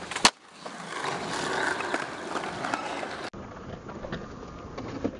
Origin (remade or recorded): recorded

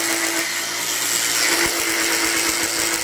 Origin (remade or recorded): recorded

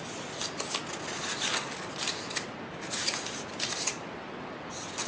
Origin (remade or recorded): recorded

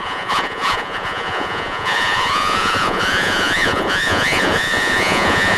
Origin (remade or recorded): remade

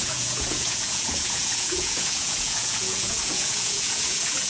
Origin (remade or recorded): remade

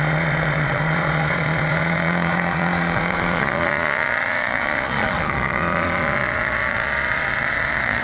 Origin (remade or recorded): remade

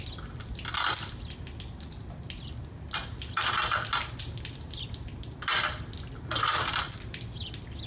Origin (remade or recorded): recorded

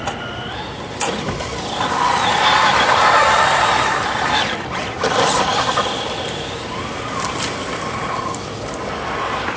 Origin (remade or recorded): recorded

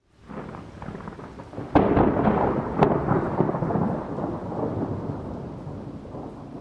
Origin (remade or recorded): recorded